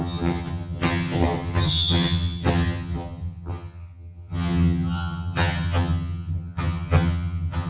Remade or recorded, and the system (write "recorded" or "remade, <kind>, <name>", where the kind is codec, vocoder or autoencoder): remade, vocoder, HiFi-GAN